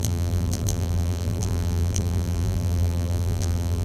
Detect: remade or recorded remade